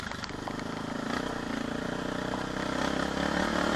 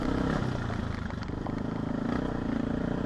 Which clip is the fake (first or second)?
second